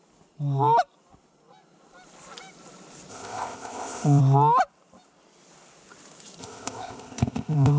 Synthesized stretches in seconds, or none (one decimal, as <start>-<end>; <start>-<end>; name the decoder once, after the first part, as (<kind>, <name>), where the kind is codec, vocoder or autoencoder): 3.1-4.2 (codec, ZipCodec); 6.4-7.8